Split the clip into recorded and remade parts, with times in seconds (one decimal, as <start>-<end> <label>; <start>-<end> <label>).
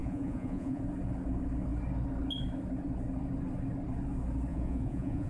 0.0-0.8 remade; 0.8-4.5 recorded; 4.5-5.3 remade